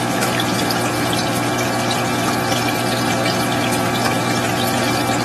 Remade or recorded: remade